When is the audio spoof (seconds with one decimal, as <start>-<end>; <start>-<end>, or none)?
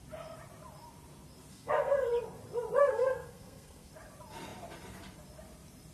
1.5-2.1; 2.8-3.9